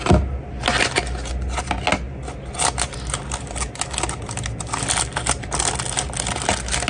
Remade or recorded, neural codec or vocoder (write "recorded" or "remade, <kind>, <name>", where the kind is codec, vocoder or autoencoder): recorded